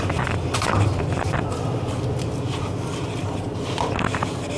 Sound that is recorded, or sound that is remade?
recorded